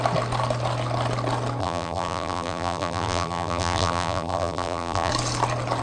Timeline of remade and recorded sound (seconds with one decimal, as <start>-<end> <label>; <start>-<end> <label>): 0.0-1.6 recorded; 1.6-5.1 remade; 5.1-5.8 recorded